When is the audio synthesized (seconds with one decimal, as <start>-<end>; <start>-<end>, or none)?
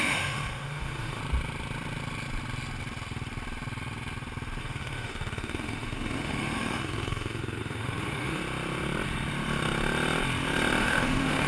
0.0-1.2; 4.6-8.4; 10.8-11.5